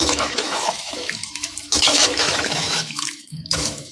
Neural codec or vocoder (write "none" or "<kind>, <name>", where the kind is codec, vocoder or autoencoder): autoencoder, DAC-VAE